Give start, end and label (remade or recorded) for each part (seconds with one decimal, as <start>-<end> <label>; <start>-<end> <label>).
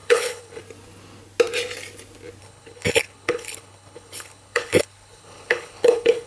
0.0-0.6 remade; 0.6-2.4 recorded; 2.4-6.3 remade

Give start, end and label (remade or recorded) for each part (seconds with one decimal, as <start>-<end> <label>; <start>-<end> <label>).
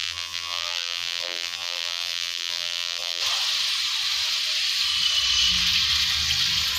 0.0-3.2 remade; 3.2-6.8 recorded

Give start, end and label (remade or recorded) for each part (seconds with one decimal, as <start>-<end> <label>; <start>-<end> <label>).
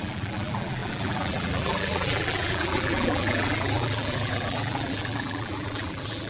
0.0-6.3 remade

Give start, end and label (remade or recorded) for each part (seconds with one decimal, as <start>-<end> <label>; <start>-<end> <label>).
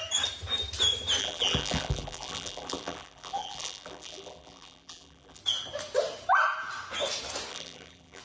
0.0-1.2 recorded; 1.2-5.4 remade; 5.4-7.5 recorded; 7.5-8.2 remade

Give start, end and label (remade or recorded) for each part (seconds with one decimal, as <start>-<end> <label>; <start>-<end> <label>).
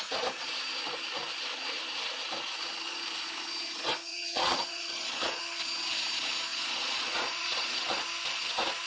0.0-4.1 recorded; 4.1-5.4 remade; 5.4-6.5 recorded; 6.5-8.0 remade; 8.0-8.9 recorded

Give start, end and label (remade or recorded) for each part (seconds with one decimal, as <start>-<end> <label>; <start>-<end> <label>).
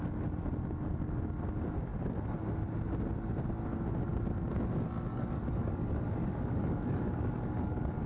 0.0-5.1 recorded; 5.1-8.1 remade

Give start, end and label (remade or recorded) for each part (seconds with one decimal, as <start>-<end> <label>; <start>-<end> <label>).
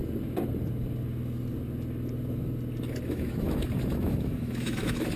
0.0-3.1 recorded; 3.1-5.2 remade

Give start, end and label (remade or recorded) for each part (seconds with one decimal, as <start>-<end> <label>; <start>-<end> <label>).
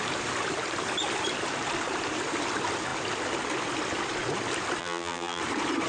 0.0-4.8 recorded; 4.8-5.4 remade; 5.4-5.9 recorded